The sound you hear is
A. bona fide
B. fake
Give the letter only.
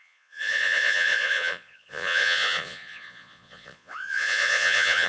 B